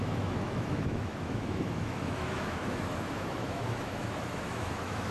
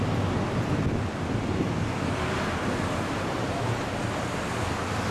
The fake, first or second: first